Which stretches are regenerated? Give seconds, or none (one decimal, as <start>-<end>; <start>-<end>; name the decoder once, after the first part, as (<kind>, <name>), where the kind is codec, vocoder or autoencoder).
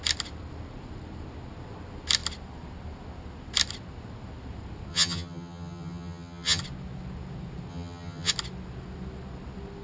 4.9-6.6 (vocoder, HiFi-GAN); 7.7-8.3